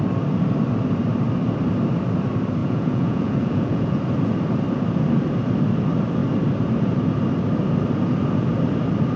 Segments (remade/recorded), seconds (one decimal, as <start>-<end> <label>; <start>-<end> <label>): 0.0-2.6 recorded; 2.6-4.0 remade; 4.0-9.2 recorded